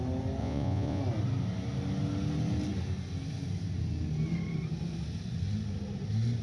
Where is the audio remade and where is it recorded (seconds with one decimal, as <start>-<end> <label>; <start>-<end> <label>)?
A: 0.0-0.4 recorded; 0.4-1.0 remade; 1.0-6.4 recorded